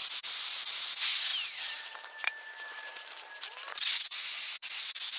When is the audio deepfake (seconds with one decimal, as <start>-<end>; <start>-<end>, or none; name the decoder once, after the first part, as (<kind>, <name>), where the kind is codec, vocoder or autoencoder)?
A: 1.3-4.3 (vocoder, BigVGAN v2)